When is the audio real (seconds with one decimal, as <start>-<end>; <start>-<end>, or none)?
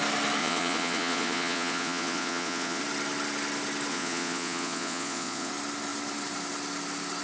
0.0-0.4; 2.8-3.9; 5.5-7.2